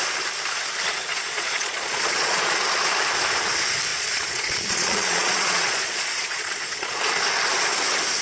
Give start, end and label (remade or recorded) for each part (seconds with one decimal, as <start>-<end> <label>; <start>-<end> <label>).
0.0-1.1 recorded; 1.1-2.6 remade; 2.6-3.9 recorded; 3.9-7.1 remade; 7.1-8.2 recorded